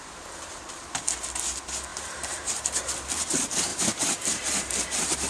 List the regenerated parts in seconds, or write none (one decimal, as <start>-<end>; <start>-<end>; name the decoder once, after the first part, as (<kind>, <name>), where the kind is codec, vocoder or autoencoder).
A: 1.9-2.9 (vocoder, BigVGAN v2); 3.7-5.3